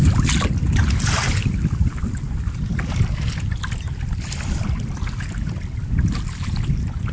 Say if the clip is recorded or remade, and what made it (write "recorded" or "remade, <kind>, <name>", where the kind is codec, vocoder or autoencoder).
recorded